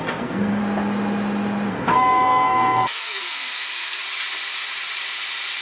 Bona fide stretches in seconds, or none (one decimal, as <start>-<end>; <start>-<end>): 0.6-1.7; 4.0-5.6